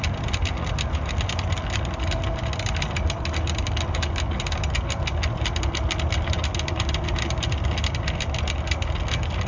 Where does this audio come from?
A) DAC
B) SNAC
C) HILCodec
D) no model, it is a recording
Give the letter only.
D